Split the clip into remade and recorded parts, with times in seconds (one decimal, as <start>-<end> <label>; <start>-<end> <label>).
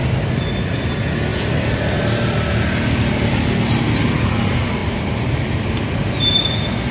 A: 0.0-6.9 recorded